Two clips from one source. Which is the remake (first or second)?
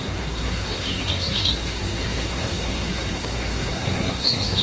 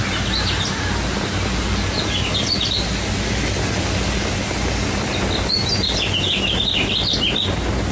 first